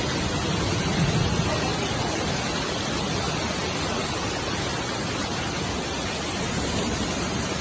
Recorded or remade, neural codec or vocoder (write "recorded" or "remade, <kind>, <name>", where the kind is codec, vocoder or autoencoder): recorded